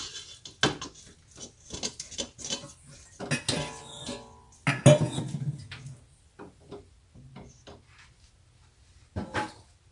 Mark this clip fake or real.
real